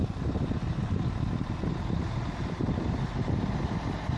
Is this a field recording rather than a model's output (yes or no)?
no